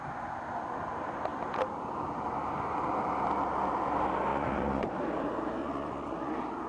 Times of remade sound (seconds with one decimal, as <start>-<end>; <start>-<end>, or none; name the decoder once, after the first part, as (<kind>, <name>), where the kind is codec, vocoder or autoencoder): 4.3-4.9 (vocoder, Vocos); 5.6-6.3

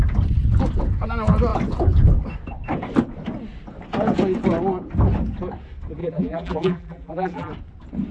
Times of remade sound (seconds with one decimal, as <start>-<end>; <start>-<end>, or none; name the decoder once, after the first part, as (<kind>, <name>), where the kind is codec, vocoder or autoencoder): 6.0-7.5 (vocoder, BigVGAN v2)

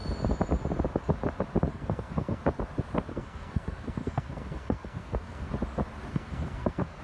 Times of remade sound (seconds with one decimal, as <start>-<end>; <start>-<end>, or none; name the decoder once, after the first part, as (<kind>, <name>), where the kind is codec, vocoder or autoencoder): 1.7-2.4 (codec, SNAC); 3.1-5.5; 6.1-7.0

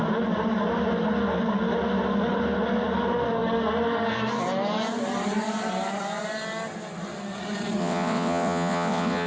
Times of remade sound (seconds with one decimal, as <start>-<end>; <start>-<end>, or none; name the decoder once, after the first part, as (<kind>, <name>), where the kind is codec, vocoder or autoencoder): 7.8-9.3 (vocoder, WaveNeXt)

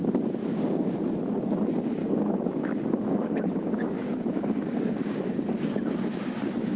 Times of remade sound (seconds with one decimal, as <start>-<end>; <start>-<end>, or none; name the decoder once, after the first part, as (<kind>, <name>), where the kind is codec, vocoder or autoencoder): 0.4-1.0 (codec, DAC); 2.0-5.6

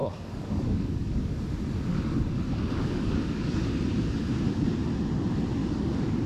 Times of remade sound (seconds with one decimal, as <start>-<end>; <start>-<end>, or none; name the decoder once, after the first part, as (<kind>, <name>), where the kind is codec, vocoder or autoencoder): 0.0-1.3 (codec, DAC); 1.9-3.6; 5.6-6.3

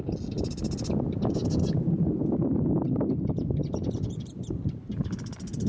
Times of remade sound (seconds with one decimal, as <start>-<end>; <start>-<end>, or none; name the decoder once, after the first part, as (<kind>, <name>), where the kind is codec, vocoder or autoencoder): 2.2-4.7 (vocoder, BigVGAN v2)